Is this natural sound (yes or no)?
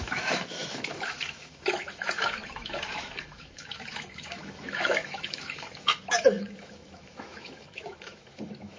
no